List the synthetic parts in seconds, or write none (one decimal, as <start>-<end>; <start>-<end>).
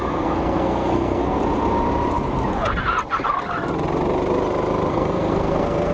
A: 0.0-1.4; 4.9-5.9